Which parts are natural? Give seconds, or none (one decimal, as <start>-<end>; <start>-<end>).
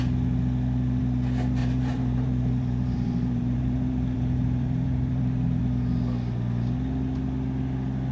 0.0-1.6; 5.6-8.1